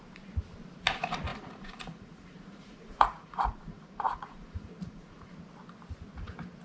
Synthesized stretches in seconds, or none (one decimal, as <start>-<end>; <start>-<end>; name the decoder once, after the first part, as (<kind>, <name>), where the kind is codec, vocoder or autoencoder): 1.3-5.3 (vocoder, Vocos)